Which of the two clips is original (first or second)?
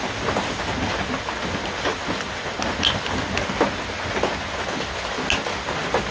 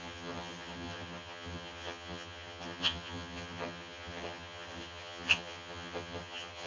first